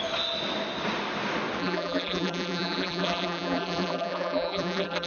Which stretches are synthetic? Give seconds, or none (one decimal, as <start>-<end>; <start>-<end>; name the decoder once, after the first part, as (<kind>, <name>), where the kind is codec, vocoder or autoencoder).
1.6-5.1 (vocoder, BigVGAN v2)